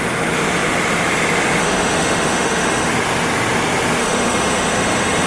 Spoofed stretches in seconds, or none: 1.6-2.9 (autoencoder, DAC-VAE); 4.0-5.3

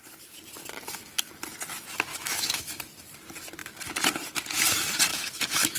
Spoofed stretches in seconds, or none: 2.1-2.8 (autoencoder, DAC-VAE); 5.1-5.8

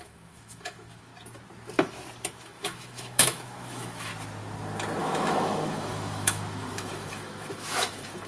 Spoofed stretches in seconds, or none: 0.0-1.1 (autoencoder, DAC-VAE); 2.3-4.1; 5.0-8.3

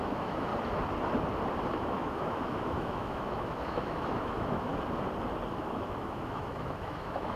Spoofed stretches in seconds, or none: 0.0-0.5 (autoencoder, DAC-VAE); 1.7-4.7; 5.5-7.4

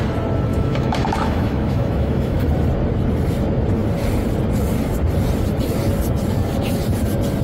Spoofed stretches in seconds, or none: 0.5-2.4 (autoencoder, DAC-VAE)

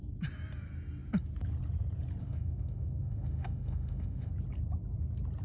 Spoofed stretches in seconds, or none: 2.2-4.3 (autoencoder, DAC-VAE)

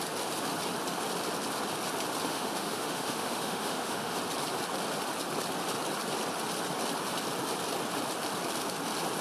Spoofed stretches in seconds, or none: 2.3-4.2 (autoencoder, DAC-VAE)